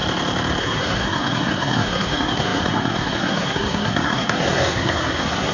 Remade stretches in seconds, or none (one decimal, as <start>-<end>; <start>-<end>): 0.6-5.5